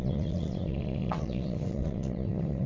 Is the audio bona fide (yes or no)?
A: no